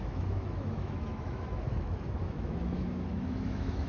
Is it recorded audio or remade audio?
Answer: remade